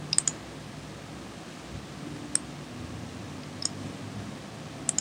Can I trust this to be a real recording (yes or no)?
yes